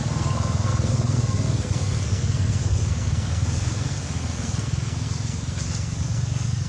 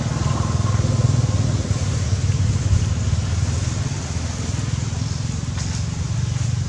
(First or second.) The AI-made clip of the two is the first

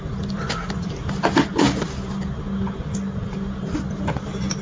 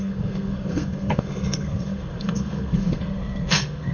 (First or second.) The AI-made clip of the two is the second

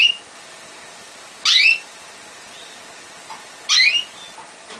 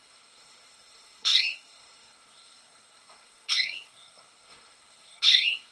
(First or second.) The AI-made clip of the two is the second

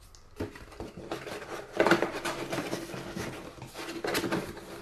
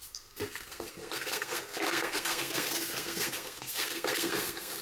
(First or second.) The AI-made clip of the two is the second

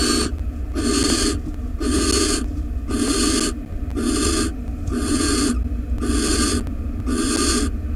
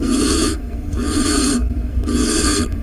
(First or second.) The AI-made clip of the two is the second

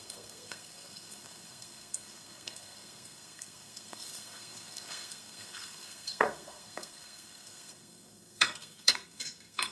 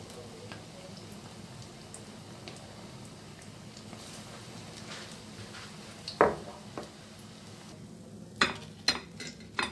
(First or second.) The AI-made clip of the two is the first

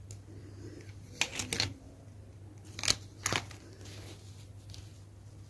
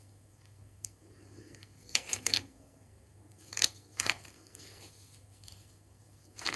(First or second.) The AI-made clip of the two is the second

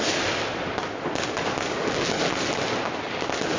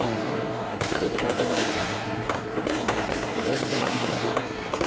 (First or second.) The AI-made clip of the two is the second